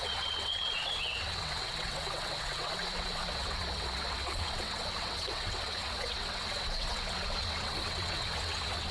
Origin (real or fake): fake